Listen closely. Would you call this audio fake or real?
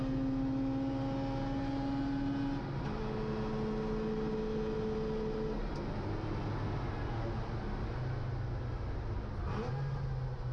real